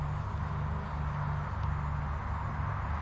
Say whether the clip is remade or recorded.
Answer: recorded